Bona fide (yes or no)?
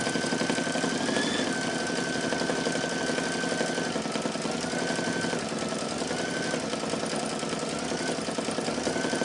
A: yes